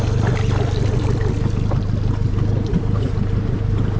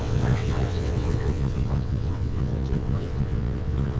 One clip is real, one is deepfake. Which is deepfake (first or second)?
second